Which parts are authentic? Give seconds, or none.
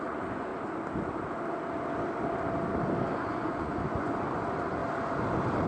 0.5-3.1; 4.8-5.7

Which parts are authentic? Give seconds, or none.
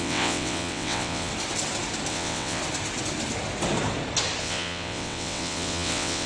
1.3-2.1; 2.6-4.4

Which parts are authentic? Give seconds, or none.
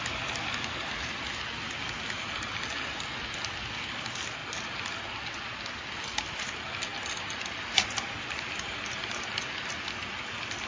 0.0-10.7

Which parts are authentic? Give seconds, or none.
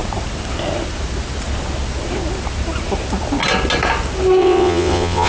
0.0-4.4